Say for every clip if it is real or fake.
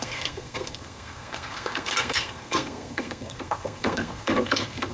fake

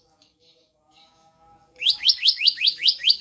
fake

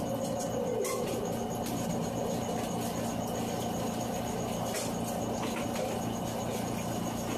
real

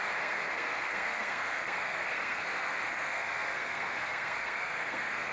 fake